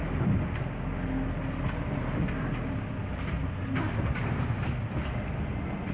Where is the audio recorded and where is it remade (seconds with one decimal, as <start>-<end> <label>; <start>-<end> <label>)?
0.0-5.9 recorded